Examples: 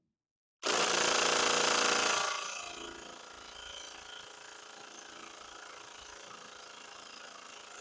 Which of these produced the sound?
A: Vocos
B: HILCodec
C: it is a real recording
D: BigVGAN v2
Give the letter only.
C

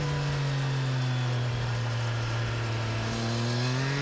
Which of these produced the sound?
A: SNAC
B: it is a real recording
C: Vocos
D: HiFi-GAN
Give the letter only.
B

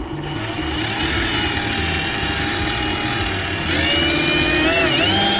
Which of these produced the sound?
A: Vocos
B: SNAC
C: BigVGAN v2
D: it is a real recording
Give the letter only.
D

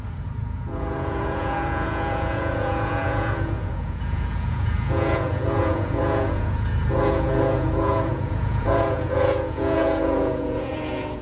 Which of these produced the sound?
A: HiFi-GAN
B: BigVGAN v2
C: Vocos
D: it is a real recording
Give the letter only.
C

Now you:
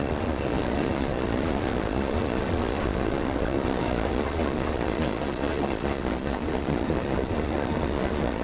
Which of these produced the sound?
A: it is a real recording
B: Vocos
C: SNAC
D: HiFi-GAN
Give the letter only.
B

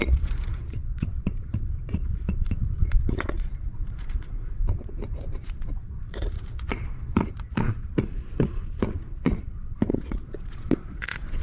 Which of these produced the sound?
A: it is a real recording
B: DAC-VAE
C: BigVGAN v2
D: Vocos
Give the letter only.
D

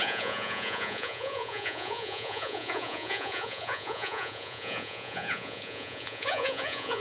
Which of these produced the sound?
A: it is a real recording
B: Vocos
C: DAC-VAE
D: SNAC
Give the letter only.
B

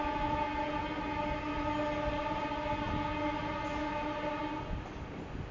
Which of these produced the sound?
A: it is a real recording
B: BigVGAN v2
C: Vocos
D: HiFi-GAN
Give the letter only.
A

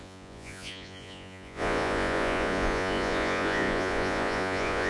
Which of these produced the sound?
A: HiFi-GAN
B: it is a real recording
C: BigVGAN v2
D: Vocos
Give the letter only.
D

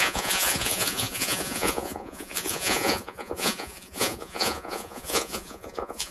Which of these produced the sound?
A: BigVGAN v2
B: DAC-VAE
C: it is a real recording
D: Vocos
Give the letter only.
D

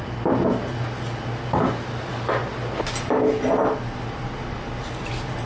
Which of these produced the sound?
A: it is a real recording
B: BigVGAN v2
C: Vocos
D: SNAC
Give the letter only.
A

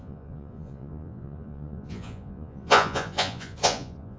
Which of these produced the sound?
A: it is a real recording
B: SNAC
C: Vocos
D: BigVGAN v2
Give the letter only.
C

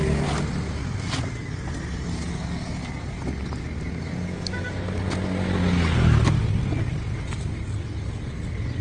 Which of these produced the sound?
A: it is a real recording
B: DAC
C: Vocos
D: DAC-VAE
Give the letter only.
A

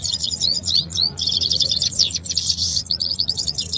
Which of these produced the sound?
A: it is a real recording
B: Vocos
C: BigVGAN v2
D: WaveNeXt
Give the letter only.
B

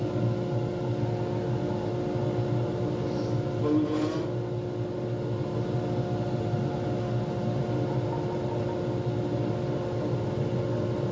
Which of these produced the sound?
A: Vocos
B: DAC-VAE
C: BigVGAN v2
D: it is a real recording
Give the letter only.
D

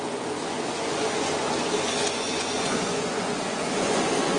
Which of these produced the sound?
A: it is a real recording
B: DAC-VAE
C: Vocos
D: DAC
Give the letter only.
C